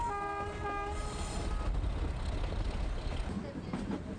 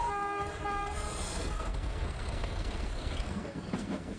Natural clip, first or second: first